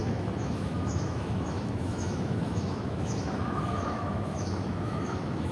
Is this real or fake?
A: fake